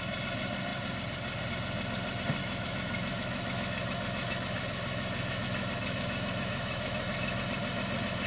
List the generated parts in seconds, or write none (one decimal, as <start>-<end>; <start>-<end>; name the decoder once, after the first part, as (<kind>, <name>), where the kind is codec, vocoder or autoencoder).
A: 2.4-7.4 (autoencoder, DAC-VAE)